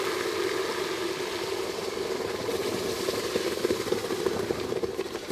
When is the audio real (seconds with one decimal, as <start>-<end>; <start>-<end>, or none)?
0.0-5.3